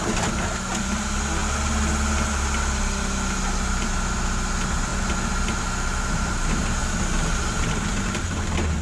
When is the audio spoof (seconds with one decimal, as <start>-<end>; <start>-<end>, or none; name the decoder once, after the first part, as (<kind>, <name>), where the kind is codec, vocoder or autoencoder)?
none